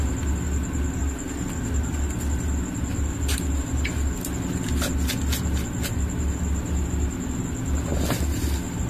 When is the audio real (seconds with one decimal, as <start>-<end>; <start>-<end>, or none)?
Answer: 0.0-8.9